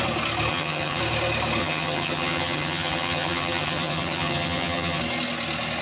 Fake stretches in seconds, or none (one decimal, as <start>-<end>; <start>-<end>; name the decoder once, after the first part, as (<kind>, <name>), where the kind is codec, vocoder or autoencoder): 0.5-1.0 (vocoder, HiFi-GAN); 1.6-5.0